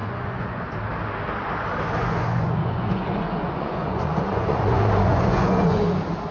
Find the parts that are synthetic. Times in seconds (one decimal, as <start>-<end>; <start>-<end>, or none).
0.0-0.6; 2.0-5.8